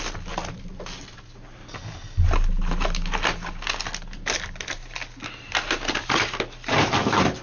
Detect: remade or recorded recorded